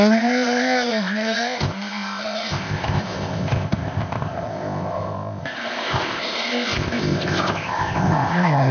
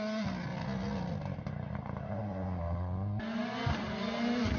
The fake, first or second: first